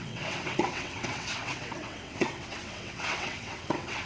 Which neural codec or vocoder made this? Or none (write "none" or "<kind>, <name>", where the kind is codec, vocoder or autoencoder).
vocoder, WaveNeXt